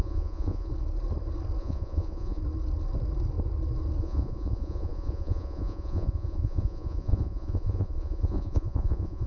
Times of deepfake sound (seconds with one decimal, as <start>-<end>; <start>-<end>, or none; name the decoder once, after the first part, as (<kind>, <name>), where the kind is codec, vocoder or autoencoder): 0.0-0.7 (vocoder, Vocos); 1.6-2.4; 4.0-9.3